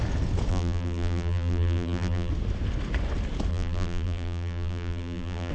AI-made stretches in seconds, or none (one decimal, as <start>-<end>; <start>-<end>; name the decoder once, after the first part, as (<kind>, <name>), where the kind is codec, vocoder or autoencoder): 0.5-2.3 (vocoder, BigVGAN v2); 3.5-5.5